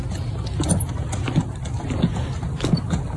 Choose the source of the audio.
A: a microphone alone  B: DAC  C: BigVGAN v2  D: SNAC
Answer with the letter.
A